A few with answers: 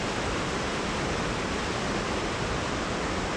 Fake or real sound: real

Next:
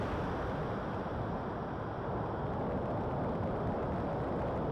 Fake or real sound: real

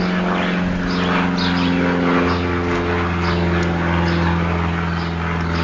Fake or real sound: real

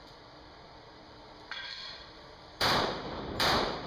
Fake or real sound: fake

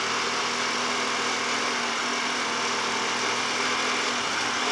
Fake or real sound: real